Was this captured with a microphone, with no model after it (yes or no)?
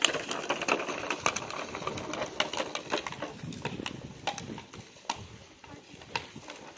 yes